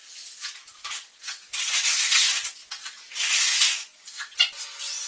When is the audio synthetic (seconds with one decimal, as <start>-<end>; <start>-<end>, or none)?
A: 0.0-5.1